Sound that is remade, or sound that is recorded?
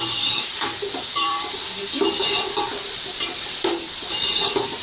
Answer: remade